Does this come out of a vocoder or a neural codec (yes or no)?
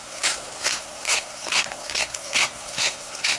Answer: yes